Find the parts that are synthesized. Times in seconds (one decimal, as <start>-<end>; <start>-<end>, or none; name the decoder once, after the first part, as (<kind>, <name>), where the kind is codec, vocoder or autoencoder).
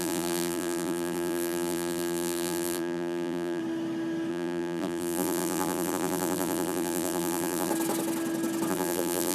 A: 0.0-3.6 (vocoder, BigVGAN v2); 4.3-7.7; 8.7-9.3